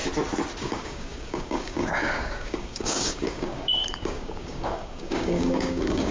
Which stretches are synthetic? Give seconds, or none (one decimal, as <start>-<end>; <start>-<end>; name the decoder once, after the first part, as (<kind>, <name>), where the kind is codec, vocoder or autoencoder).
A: 0.6-6.1 (codec, DAC)